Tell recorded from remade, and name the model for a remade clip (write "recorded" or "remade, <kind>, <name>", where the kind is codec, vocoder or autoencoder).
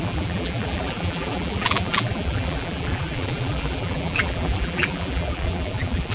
remade, vocoder, BigVGAN v2